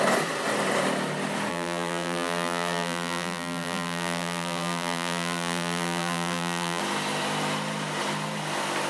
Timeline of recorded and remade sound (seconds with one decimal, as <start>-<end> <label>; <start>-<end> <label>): 0.0-1.5 recorded; 1.5-6.8 remade; 6.8-8.9 recorded